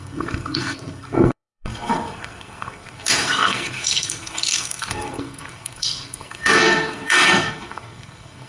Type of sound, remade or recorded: remade